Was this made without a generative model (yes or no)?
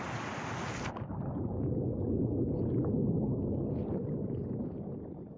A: yes